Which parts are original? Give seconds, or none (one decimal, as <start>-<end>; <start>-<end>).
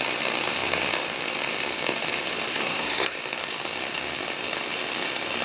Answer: 0.0-2.5; 3.2-5.4